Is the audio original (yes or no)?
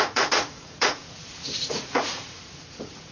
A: no